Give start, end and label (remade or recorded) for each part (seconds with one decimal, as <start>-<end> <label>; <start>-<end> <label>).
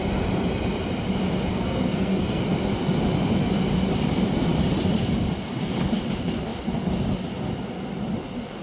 0.0-1.5 recorded; 1.5-2.4 remade; 2.4-8.6 recorded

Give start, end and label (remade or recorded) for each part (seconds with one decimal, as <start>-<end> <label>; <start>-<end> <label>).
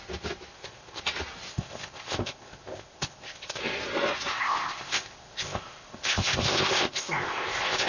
0.0-0.5 recorded; 0.5-1.0 remade; 1.0-1.5 recorded; 1.5-3.6 remade; 3.6-4.3 recorded; 4.3-7.9 remade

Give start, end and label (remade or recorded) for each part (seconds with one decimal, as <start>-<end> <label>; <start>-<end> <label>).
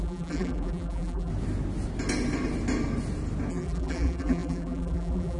0.0-1.3 remade; 1.3-3.5 recorded; 3.5-5.4 remade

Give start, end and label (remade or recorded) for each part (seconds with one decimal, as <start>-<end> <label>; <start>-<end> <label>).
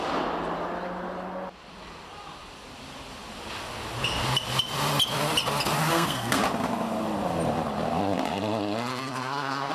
0.0-5.9 recorded; 5.9-6.4 remade; 6.4-8.9 recorded; 8.9-9.7 remade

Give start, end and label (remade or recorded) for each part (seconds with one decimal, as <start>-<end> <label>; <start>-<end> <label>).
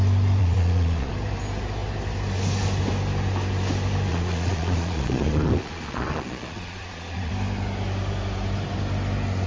0.0-0.4 recorded; 0.4-1.1 remade; 1.1-4.1 recorded; 4.1-7.3 remade; 7.3-9.5 recorded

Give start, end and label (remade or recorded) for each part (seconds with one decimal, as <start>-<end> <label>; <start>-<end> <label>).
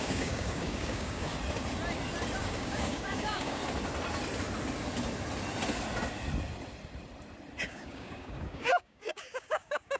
0.0-1.3 remade; 1.3-2.4 recorded; 2.4-3.6 remade; 3.6-7.6 recorded; 7.6-10.0 remade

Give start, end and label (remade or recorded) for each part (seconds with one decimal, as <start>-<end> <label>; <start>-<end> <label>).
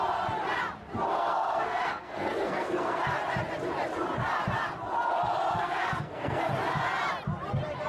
0.0-1.1 recorded; 1.1-3.0 remade; 3.0-5.5 recorded; 5.5-6.5 remade; 6.5-7.9 recorded